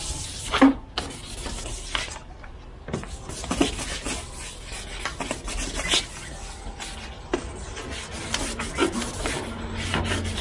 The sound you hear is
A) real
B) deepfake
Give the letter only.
A